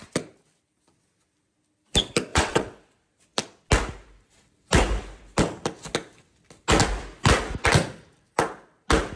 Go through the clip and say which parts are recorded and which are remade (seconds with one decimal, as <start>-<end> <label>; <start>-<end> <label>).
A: 0.0-2.3 recorded; 2.3-2.8 remade; 2.8-9.2 recorded